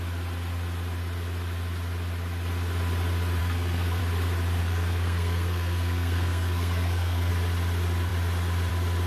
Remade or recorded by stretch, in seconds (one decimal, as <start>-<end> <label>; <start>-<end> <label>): 0.0-3.4 recorded; 3.4-4.0 remade; 4.0-4.6 recorded; 4.6-7.3 remade; 7.3-9.1 recorded